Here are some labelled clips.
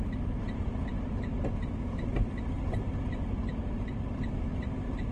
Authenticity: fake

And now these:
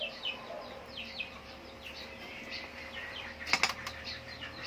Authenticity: real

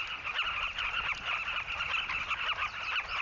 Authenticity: real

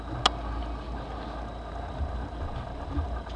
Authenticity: real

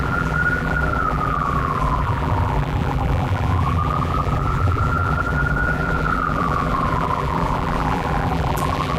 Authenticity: fake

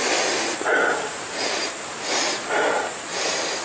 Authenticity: fake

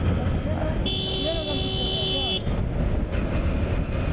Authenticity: real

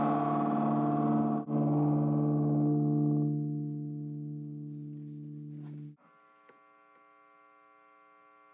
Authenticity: real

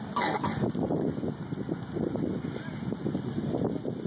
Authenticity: real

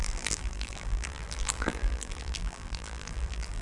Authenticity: fake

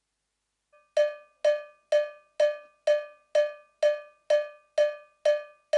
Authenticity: real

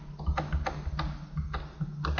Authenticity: real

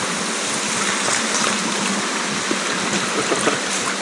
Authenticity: real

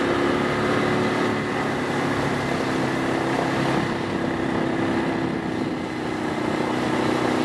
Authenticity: real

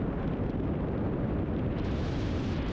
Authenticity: fake